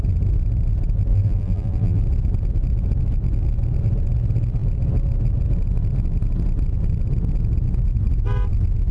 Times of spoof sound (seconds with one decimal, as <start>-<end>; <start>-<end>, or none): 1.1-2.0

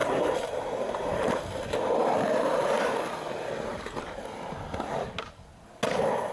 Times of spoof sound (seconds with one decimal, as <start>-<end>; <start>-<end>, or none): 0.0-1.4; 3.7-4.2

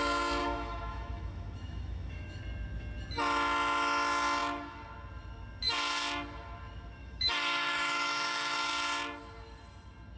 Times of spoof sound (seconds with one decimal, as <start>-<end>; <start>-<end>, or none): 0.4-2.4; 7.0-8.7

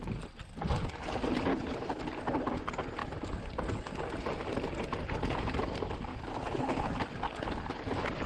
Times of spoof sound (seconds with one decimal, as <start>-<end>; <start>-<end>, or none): 1.5-2.0; 6.1-6.9